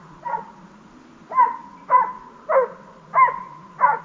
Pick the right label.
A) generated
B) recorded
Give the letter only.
B